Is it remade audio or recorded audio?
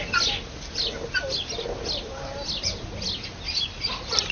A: recorded